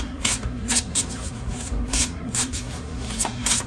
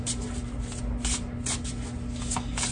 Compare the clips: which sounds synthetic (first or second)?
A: first